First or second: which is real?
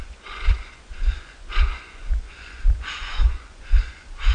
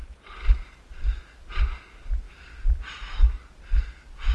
second